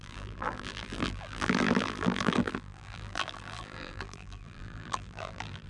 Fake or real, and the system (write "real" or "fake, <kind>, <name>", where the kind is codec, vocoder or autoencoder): fake, vocoder, BigVGAN v2